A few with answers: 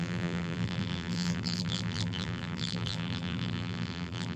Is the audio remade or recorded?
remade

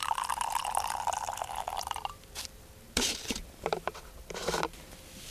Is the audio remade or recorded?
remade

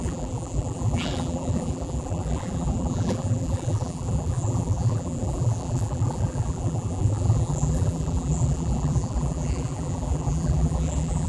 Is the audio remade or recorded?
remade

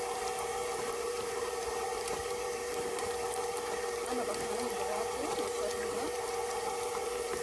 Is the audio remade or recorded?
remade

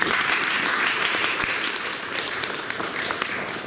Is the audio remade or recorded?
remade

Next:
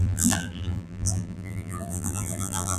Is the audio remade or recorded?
remade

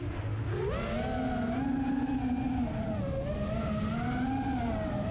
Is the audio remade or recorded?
recorded